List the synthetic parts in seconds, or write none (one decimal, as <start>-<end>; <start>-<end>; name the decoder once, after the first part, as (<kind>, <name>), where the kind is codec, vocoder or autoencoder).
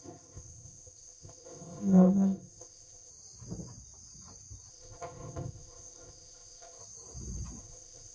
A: 0.0-3.1 (codec, ZipCodec); 4.7-6.8; 7.6-8.1